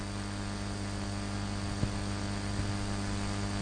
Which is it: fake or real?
real